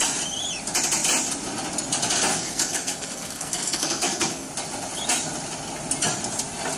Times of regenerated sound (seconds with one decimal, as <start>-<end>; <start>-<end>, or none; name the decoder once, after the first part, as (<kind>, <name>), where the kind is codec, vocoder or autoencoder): 2.3-4.5 (codec, SNAC)